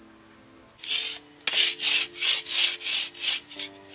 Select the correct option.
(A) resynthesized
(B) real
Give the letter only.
B